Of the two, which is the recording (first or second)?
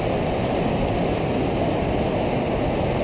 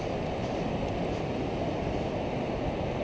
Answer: first